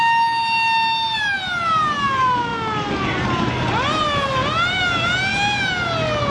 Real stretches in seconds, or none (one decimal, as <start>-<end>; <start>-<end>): 0.0-6.3